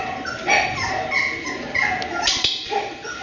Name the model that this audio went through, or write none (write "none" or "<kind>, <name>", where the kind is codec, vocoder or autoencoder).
none